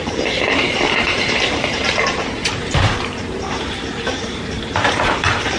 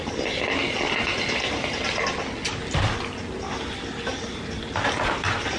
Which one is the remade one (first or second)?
first